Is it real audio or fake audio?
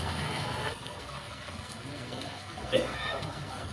fake